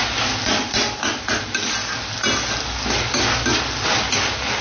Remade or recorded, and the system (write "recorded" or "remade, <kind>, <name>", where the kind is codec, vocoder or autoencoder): recorded